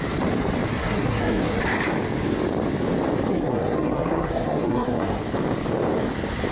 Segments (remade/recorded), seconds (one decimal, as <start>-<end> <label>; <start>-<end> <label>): 0.0-0.7 recorded; 0.7-1.6 remade; 1.6-3.3 recorded; 3.3-5.2 remade; 5.2-6.5 recorded